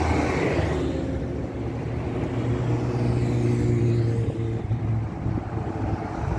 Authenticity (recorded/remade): recorded